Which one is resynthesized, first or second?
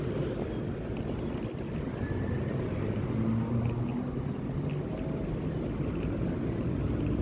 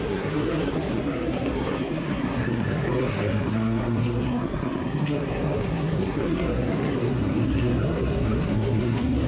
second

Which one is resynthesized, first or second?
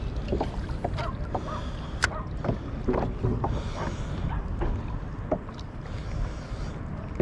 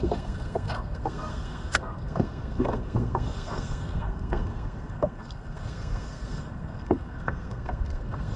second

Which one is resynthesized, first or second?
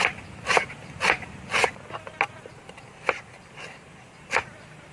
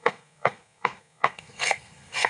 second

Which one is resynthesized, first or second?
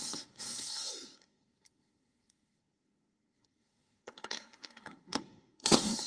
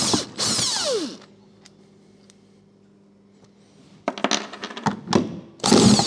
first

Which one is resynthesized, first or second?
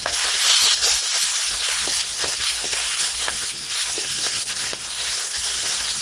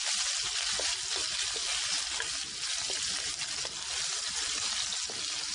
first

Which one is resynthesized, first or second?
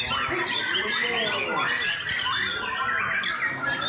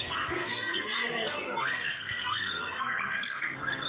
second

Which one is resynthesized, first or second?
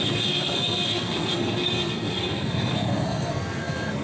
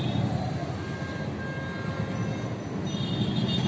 first